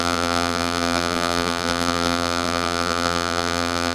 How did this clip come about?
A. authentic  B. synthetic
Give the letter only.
B